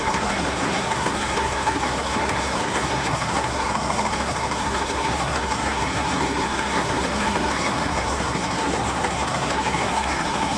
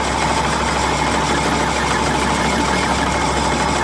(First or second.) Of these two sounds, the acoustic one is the second